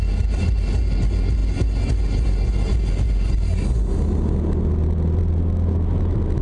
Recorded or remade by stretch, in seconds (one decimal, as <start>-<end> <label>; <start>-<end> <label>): 0.0-6.4 recorded